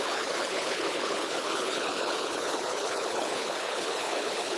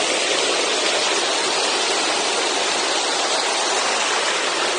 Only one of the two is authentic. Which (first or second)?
second